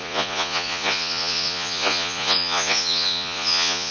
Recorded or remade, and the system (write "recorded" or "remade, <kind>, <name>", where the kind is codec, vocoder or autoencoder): remade, vocoder, Vocos